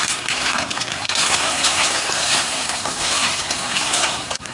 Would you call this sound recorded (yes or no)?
no